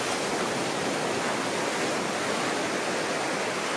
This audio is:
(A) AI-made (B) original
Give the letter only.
B